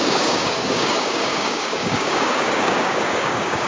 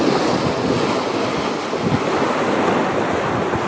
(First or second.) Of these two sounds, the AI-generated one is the first